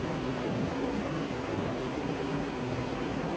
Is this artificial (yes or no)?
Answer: yes